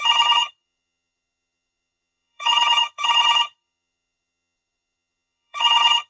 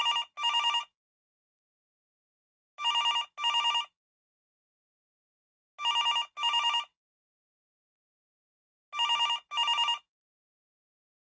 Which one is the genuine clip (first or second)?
second